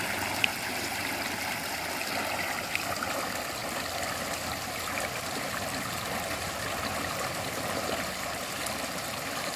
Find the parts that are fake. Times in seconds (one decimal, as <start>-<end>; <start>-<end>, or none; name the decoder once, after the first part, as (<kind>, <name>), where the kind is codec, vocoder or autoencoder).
none

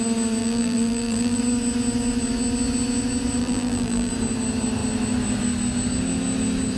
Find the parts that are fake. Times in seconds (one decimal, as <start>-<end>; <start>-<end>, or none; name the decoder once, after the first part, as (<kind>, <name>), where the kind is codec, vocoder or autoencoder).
0.4-1.4 (vocoder, BigVGAN v2); 3.4-4.1

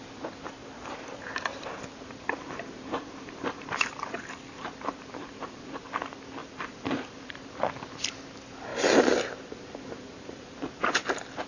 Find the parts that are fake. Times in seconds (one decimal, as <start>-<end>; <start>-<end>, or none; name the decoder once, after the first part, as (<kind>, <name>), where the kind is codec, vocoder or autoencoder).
0.6-5.4 (vocoder, BigVGAN v2); 6.4-7.5; 8.7-11.0

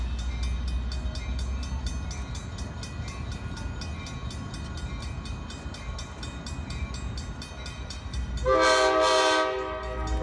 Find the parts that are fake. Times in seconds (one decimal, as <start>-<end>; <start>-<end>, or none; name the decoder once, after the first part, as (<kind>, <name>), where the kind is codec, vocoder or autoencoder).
7.7-8.3 (vocoder, BigVGAN v2)